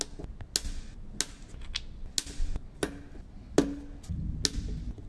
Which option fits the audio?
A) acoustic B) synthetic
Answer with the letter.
A